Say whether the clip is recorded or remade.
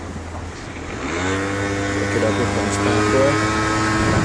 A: recorded